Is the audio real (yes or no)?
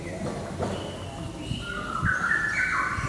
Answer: yes